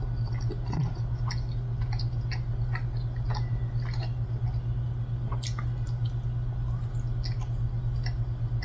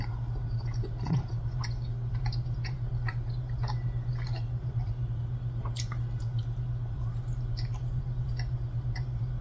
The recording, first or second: first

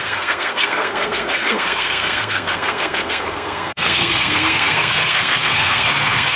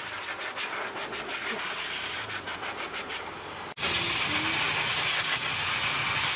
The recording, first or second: second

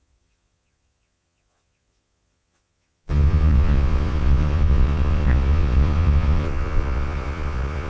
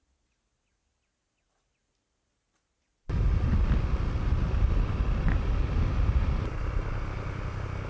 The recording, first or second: second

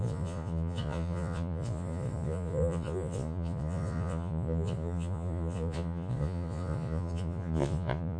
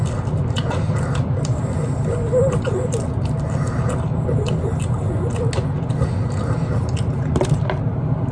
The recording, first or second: second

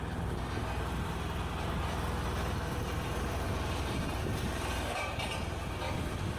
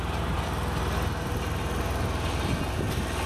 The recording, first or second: second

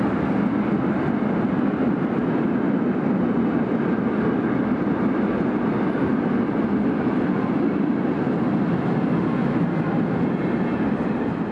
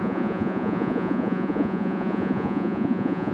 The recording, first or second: first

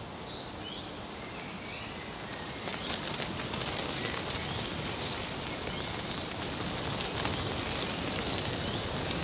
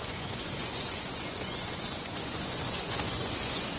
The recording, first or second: first